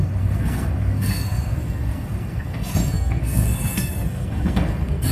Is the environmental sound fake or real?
fake